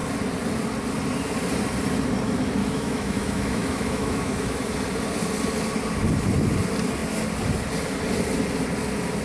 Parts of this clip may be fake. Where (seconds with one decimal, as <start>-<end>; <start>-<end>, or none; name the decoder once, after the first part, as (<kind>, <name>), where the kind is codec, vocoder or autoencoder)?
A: 2.6-4.6 (autoencoder, DAC-VAE)